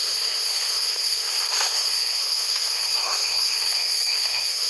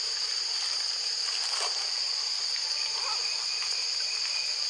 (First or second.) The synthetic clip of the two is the first